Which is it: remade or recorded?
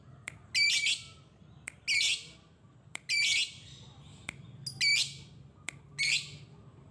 recorded